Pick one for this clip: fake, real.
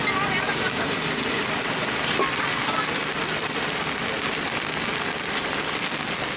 real